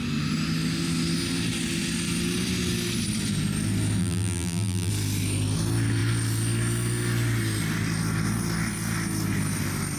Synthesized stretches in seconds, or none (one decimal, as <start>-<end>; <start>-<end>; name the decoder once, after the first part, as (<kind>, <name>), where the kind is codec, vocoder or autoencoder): 4.0-4.9 (vocoder, BigVGAN v2)